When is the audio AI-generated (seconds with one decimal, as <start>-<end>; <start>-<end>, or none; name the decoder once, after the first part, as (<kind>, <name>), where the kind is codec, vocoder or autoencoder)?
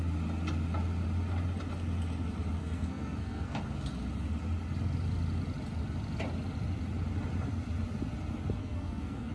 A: 2.6-3.6 (codec, SNAC); 8.6-9.3